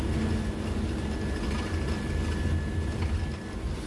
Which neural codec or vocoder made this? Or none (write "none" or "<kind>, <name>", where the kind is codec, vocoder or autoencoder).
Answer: none